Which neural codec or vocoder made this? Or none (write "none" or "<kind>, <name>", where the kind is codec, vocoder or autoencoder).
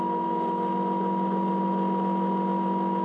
none